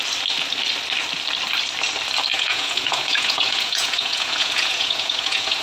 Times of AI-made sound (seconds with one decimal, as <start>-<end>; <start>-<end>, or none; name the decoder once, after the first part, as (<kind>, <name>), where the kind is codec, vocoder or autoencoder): 2.3-5.6 (vocoder, Vocos)